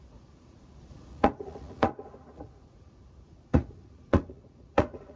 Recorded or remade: remade